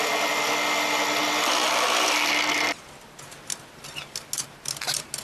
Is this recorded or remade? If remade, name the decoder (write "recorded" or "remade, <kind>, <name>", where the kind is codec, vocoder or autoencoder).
recorded